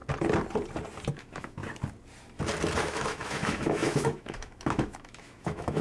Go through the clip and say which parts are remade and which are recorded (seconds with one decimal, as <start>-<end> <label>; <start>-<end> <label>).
0.0-1.1 recorded; 1.1-1.6 remade; 1.6-2.8 recorded; 2.8-5.8 remade